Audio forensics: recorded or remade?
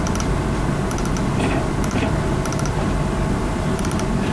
recorded